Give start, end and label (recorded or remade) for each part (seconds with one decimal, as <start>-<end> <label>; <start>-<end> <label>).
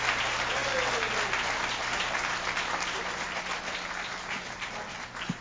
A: 0.0-5.4 recorded